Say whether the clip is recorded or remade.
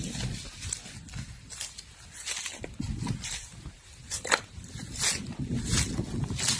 recorded